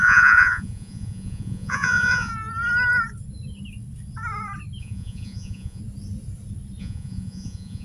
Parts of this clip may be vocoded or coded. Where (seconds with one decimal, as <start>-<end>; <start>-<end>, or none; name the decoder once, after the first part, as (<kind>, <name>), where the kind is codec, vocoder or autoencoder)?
0.0-2.3 (vocoder, Vocos); 4.8-5.8; 6.8-7.8